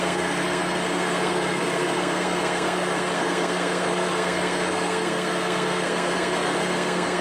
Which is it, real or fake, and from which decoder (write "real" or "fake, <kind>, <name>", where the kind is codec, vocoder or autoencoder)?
fake, codec, SNAC